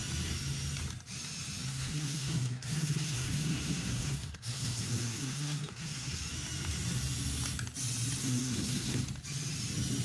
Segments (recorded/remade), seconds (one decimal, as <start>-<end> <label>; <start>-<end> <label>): 0.0-1.7 recorded; 1.7-6.2 remade; 6.2-8.2 recorded; 8.2-9.0 remade; 9.0-10.0 recorded